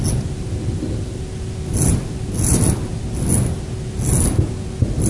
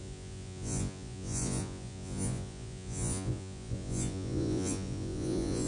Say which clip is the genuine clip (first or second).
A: first